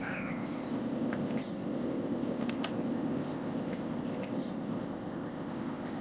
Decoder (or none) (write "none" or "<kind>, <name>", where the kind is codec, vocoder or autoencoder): codec, ZipCodec